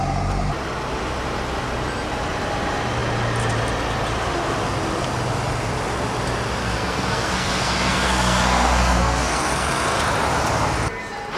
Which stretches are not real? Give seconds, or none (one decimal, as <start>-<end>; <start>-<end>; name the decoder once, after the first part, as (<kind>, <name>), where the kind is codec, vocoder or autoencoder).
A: 6.6-10.0 (codec, SNAC)

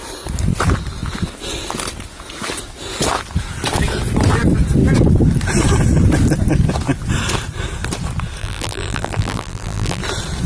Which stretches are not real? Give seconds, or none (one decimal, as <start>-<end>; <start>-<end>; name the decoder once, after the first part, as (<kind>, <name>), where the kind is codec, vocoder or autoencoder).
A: 8.4-10.0 (vocoder, BigVGAN v2)

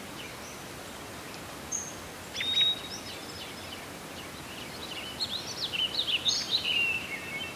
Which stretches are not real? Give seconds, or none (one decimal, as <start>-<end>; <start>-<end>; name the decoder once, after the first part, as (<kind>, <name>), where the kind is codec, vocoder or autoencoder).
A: none